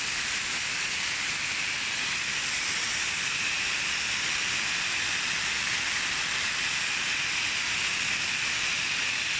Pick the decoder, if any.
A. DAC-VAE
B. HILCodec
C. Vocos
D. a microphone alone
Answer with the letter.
D